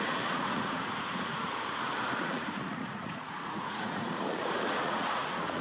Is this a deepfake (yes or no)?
yes